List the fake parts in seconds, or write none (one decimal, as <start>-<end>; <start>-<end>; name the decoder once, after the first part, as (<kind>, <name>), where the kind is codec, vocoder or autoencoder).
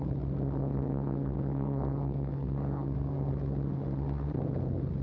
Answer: 0.6-3.3 (codec, SNAC)